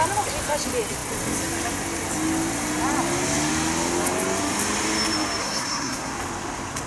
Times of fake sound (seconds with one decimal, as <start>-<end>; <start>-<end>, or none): 5.4-6.1